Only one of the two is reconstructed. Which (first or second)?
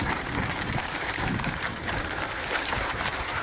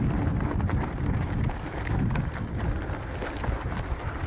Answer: first